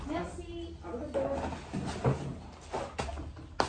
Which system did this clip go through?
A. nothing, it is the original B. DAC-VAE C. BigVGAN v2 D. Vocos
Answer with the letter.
A